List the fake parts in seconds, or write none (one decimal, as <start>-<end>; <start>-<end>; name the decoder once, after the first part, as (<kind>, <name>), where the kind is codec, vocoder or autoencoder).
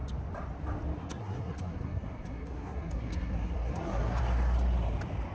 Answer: 1.0-4.2 (codec, SNAC)